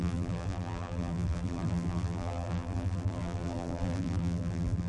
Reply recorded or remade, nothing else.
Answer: remade